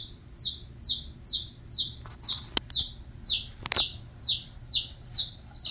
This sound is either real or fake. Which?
real